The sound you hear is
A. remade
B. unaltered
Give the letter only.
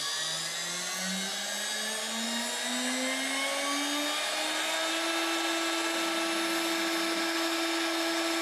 B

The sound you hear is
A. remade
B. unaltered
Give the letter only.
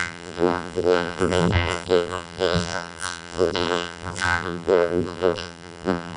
A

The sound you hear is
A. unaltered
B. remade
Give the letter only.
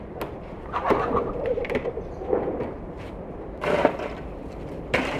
B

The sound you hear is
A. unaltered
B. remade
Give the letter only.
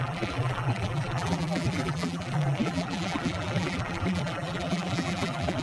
B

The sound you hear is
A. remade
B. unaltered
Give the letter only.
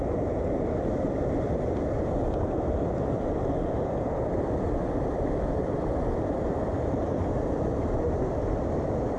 B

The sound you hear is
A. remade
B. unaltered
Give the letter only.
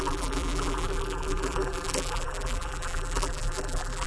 A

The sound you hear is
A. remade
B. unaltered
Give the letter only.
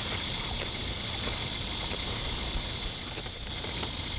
B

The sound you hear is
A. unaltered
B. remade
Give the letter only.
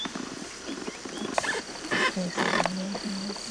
B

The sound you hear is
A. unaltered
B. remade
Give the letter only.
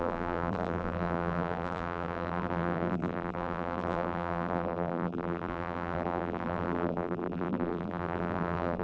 B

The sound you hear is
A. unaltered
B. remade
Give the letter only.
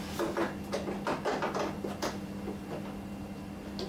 A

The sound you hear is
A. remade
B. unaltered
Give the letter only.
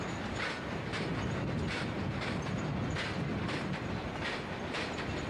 B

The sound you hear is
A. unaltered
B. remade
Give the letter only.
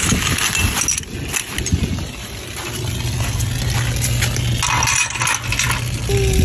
A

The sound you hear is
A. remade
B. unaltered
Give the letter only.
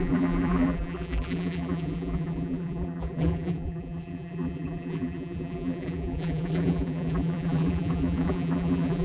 A